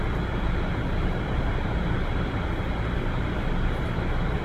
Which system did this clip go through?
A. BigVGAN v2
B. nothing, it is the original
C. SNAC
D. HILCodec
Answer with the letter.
B